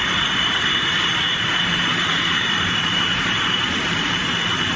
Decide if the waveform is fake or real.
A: fake